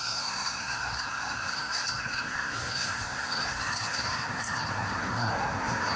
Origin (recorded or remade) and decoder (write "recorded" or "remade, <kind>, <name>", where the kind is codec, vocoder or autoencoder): remade, codec, SNAC